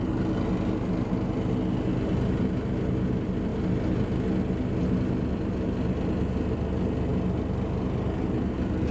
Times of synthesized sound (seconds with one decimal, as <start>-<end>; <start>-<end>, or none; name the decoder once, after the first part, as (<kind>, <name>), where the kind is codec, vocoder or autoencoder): none